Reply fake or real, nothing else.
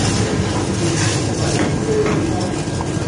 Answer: real